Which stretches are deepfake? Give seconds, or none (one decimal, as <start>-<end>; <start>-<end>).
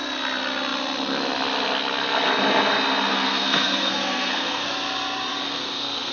3.1-4.7; 5.3-6.1